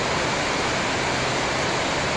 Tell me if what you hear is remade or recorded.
recorded